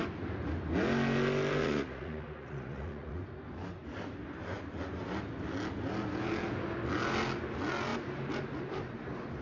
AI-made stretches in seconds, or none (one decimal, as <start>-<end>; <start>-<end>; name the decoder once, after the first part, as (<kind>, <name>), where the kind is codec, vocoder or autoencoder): 1.6-3.2 (vocoder, Vocos)